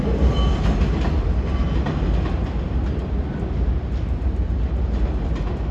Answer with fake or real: real